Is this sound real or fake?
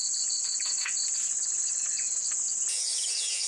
fake